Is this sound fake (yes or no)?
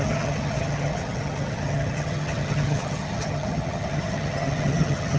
yes